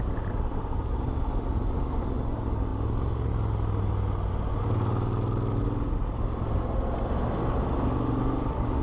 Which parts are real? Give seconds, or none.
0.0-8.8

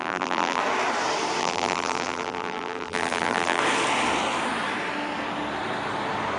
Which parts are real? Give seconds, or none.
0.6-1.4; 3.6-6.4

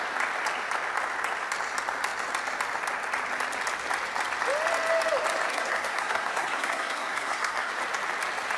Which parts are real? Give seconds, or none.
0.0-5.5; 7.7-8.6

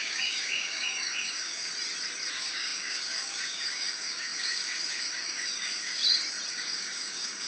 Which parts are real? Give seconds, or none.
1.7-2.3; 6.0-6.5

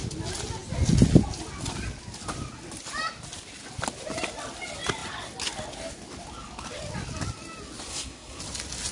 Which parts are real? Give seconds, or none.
0.0-7.9; 8.4-8.9

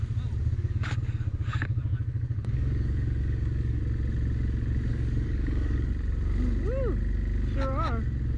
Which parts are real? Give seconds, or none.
0.0-0.4; 3.8-4.9; 5.9-8.4

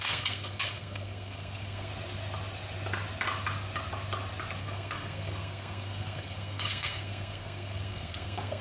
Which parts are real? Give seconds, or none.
1.9-4.6